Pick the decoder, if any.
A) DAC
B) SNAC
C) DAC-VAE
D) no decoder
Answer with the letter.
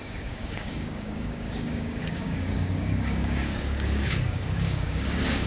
A